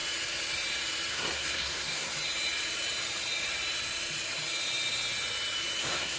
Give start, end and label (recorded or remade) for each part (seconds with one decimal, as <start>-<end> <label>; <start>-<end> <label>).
0.0-1.1 recorded; 1.1-2.1 remade; 2.1-5.8 recorded; 5.8-6.2 remade